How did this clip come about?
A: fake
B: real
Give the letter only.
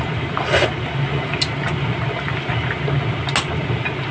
B